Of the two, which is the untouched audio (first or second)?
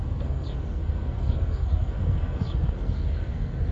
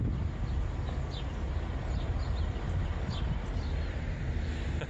second